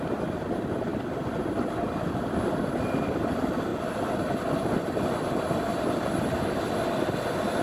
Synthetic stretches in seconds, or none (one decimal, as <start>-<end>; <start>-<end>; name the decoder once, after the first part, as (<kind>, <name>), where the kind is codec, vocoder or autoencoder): none